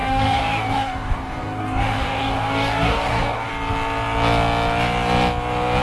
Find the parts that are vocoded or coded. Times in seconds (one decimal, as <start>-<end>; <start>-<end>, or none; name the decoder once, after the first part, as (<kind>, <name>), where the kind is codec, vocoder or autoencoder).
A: 0.0-3.5 (codec, DAC)